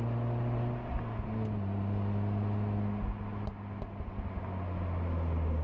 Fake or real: real